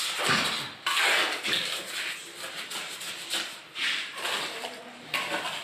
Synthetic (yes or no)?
no